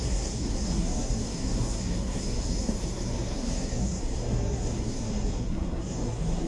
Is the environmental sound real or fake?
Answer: fake